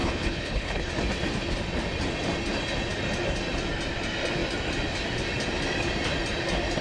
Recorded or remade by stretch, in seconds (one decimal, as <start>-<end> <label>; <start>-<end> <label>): 0.0-0.9 remade; 0.9-6.8 recorded

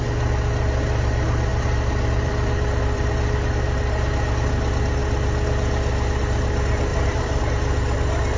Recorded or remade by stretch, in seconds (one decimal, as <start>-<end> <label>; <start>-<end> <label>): 0.0-1.5 recorded; 1.5-3.1 remade; 3.1-6.9 recorded; 6.9-7.4 remade; 7.4-8.4 recorded

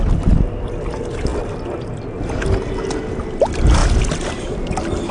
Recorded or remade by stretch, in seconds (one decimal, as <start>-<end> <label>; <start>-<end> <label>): 0.0-5.1 recorded

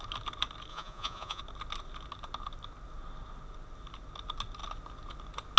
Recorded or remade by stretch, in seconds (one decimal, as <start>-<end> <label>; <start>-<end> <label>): 0.0-0.7 recorded; 0.7-1.4 remade; 1.4-5.6 recorded

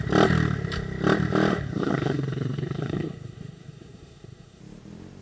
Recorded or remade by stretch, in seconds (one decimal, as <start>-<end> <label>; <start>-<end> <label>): 0.0-1.5 recorded; 1.5-4.6 remade; 4.6-5.2 recorded

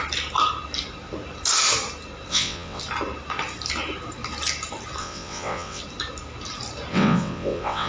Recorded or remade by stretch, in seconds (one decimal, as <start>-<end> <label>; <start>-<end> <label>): 0.0-2.3 recorded; 2.3-2.8 remade; 2.8-5.0 recorded; 5.0-5.8 remade; 5.8-6.9 recorded; 6.9-7.9 remade